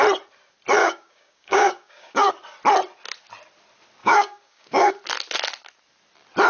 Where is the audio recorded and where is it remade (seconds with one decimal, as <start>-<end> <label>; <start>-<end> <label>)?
0.0-0.8 recorded; 0.8-2.3 remade; 2.3-4.0 recorded; 4.0-4.9 remade; 4.9-6.5 recorded